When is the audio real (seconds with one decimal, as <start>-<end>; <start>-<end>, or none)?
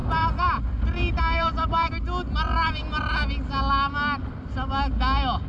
1.9-5.5